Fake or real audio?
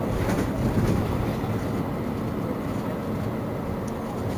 real